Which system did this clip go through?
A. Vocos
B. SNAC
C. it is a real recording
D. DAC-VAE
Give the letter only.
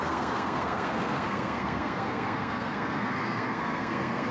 B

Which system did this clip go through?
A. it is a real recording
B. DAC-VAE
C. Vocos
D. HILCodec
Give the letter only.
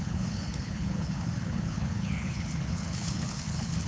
D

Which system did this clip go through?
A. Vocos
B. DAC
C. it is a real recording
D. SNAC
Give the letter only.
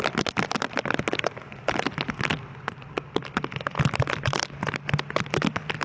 C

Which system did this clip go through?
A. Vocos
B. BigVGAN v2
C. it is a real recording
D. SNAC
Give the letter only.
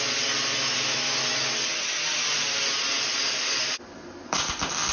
C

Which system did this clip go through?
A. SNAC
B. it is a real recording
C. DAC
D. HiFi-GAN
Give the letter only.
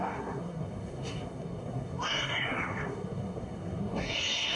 A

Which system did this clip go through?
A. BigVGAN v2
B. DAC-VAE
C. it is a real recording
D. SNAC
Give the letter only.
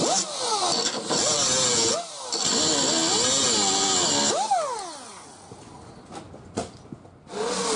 C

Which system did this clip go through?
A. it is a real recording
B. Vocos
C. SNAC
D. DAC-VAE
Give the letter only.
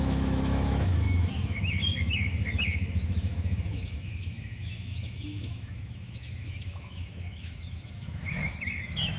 D